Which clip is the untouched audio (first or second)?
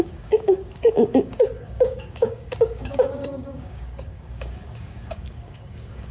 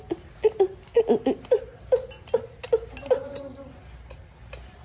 second